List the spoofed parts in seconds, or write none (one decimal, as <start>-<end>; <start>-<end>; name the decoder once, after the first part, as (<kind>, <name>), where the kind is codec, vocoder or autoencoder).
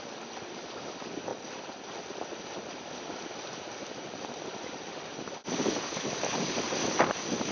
none